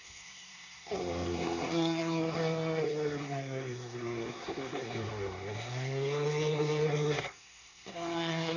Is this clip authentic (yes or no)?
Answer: no